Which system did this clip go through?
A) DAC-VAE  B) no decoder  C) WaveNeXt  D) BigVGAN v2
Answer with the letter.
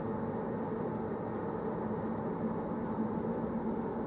B